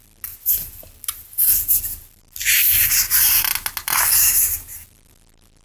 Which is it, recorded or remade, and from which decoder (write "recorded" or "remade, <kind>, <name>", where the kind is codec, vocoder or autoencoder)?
recorded